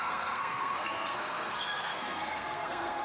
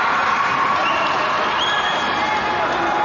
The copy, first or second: first